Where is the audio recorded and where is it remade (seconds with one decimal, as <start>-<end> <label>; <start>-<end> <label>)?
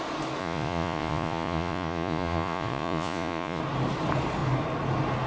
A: 0.0-0.4 recorded; 0.4-3.6 remade; 3.6-5.3 recorded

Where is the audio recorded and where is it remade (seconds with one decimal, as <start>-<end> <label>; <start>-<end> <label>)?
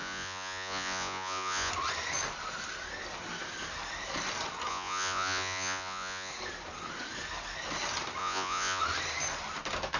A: 0.0-1.7 remade; 1.7-4.7 recorded; 4.7-6.3 remade; 6.3-8.2 recorded; 8.2-8.8 remade; 8.8-10.0 recorded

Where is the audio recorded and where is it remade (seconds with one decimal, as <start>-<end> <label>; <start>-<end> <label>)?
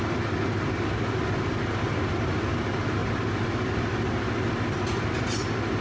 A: 0.0-5.8 recorded